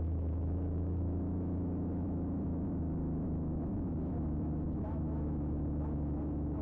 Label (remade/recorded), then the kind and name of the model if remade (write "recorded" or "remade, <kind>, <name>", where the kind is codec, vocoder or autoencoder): remade, autoencoder, DAC-VAE